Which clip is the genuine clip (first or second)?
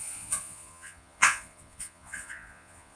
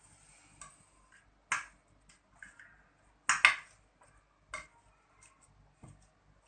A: second